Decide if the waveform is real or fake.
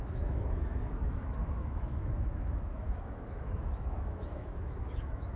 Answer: fake